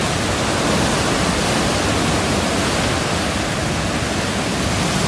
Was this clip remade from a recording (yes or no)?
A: no